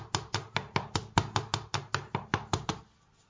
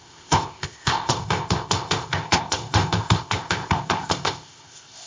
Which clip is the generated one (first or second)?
second